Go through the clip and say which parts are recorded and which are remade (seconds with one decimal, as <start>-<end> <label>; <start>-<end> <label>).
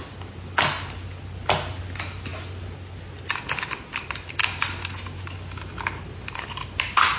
0.0-7.2 recorded